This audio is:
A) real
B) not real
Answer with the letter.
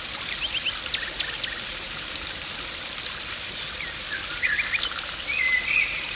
A